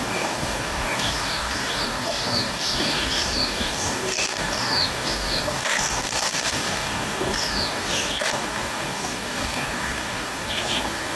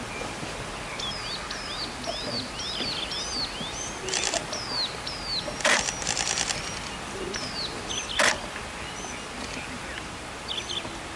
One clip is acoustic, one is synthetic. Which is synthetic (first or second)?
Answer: first